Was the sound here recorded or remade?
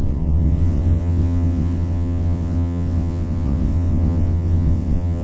remade